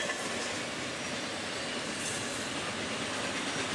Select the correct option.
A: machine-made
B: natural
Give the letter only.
B